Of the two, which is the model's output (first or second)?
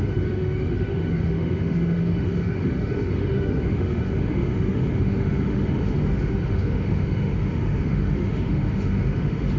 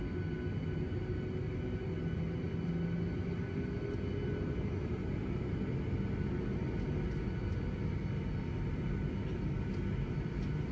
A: first